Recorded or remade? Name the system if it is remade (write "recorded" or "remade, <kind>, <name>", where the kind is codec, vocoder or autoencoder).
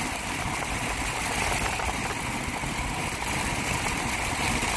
recorded